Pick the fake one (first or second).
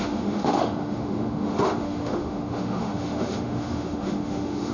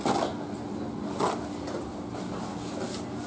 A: first